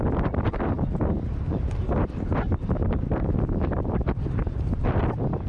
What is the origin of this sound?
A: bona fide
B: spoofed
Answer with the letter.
B